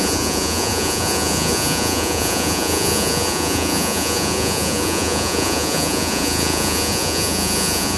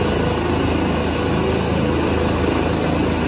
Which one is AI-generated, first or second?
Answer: first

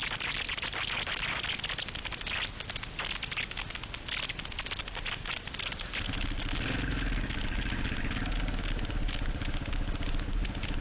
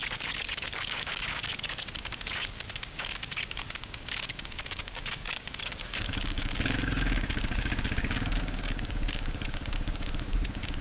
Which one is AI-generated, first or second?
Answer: second